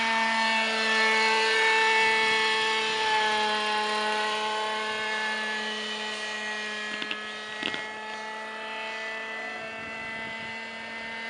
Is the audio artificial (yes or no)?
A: no